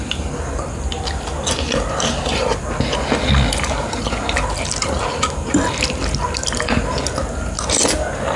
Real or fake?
real